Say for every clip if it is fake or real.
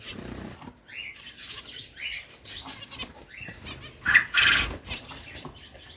real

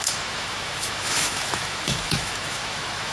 fake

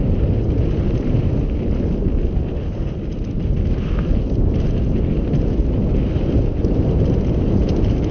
real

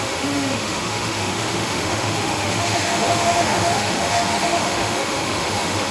fake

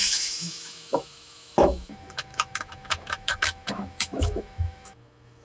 fake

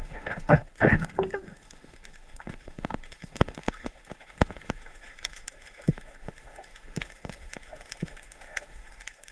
fake